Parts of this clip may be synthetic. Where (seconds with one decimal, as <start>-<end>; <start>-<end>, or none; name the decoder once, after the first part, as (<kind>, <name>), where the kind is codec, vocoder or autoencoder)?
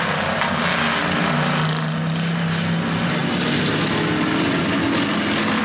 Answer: none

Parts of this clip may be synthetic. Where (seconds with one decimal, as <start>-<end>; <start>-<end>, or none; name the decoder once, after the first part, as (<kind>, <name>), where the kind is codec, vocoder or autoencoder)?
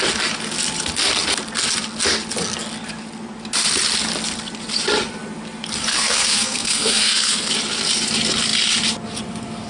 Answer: 5.9-7.5 (codec, SNAC)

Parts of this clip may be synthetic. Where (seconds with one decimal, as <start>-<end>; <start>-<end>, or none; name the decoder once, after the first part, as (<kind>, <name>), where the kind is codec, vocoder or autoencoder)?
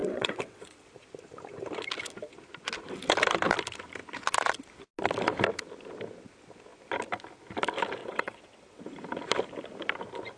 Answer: 0.0-0.9 (vocoder, WaveNeXt); 8.0-8.8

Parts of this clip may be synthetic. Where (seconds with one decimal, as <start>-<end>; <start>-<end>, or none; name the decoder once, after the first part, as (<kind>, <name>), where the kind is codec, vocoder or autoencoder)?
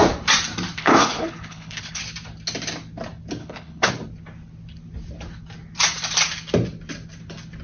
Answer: 0.8-2.0 (codec, HILCodec); 3.4-3.9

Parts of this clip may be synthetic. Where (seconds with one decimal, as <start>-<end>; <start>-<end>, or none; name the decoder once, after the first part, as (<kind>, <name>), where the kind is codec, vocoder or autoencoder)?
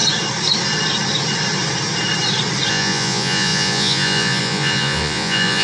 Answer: 2.7-5.6 (vocoder, Vocos)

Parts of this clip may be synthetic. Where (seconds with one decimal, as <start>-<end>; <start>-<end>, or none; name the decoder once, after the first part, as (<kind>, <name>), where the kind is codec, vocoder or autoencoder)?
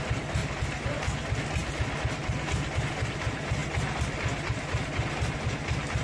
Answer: 0.4-0.9 (vocoder, BigVGAN v2)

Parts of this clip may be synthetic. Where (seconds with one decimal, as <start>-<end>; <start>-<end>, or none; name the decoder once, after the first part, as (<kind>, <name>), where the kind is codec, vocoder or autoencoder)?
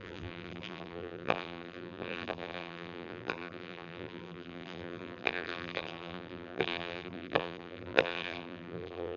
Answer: 0.0-9.2 (vocoder, BigVGAN v2)